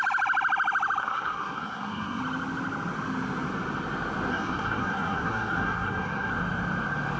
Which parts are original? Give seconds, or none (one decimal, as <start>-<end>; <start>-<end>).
0.0-1.0; 2.2-4.3; 6.3-7.2